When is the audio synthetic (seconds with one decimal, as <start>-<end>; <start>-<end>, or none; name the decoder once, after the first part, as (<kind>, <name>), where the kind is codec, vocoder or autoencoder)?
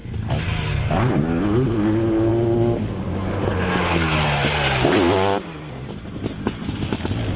none